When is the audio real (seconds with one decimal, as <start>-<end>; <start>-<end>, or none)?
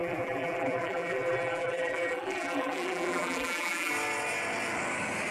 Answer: 3.9-5.3